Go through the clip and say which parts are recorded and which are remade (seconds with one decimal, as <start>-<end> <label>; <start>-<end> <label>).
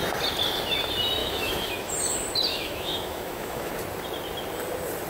0.0-1.2 recorded; 1.2-1.9 remade; 1.9-2.5 recorded; 2.5-3.7 remade; 3.7-5.1 recorded